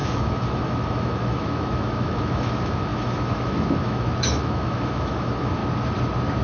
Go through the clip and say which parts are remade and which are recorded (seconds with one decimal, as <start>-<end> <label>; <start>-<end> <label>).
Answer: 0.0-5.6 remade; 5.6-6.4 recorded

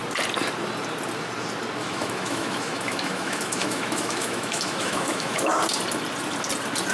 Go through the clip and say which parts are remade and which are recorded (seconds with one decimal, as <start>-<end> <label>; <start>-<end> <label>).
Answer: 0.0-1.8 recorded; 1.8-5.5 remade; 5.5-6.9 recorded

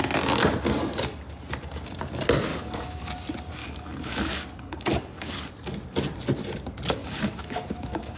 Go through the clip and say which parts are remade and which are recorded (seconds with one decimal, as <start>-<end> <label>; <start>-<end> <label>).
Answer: 0.0-2.5 recorded; 2.5-3.1 remade; 3.1-3.6 recorded; 3.6-5.5 remade; 5.5-7.0 recorded; 7.0-8.2 remade

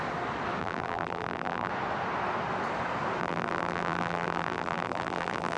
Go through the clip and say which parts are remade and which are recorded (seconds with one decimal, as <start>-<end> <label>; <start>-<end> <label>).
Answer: 0.0-0.6 recorded; 0.6-1.7 remade; 1.7-3.2 recorded; 3.2-5.6 remade